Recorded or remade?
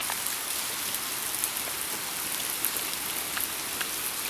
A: recorded